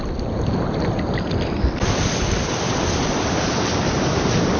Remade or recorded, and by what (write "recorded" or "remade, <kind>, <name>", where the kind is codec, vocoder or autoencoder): recorded